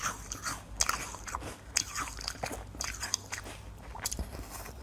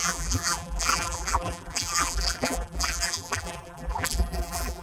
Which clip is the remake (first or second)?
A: second